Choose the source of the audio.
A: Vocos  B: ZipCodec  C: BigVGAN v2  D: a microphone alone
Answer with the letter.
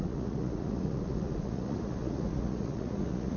A